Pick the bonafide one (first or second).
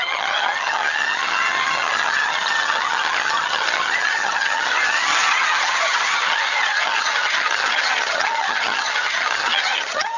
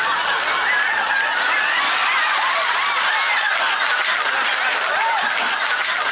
second